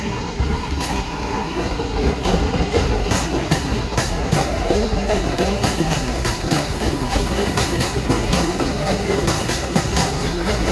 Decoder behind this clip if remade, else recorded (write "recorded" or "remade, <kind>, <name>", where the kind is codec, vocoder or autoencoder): remade, codec, SNAC